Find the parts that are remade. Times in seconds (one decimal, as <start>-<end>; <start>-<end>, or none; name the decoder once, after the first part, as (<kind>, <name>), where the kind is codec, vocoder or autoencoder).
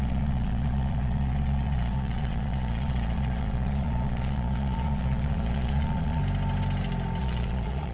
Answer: 0.0-6.2 (vocoder, Vocos); 7.2-7.9